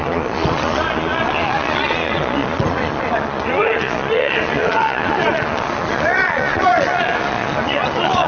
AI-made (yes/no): yes